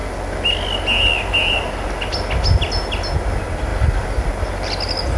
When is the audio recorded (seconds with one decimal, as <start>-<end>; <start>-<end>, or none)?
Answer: 0.0-5.2